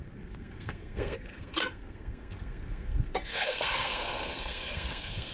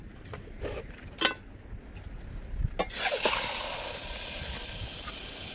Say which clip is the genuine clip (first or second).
second